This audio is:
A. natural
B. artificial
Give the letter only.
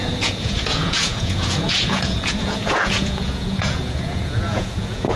B